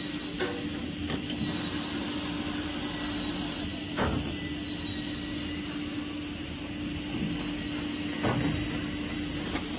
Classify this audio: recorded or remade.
recorded